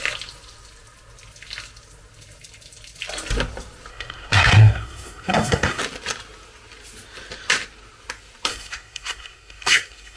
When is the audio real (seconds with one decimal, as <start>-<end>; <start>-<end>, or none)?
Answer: 0.0-3.9; 5.8-8.5